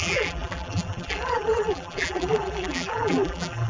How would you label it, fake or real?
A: fake